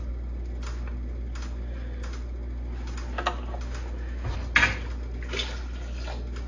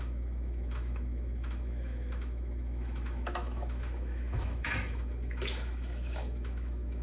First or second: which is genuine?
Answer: first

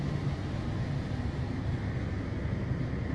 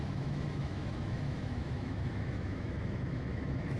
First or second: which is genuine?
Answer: first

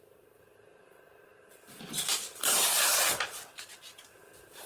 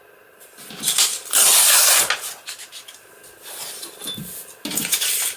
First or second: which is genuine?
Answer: second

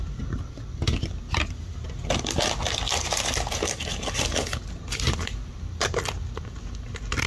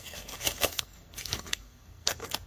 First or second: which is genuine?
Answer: first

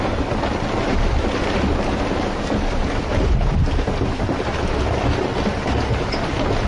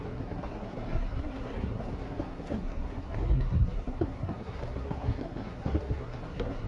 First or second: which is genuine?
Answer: first